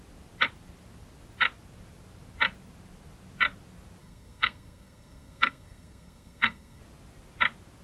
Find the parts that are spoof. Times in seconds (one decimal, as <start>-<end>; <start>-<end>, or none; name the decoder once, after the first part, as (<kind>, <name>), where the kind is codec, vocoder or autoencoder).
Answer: 4.0-6.8 (codec, SNAC)